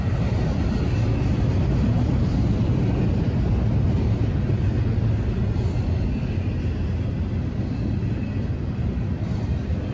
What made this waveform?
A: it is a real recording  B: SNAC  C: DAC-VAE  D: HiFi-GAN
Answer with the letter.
A